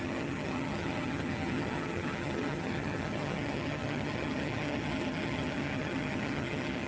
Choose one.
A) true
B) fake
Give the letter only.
B